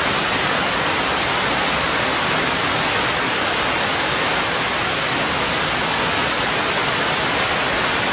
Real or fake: real